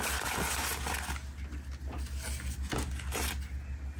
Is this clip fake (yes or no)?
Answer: no